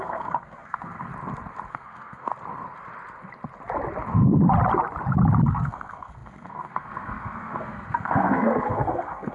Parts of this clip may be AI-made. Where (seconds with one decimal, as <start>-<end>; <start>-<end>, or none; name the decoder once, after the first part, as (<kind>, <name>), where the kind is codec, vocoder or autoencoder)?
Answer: 0.0-1.1 (codec, SNAC); 1.7-2.3; 5.5-9.3